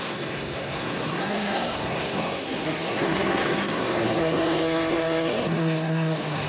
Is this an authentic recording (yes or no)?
no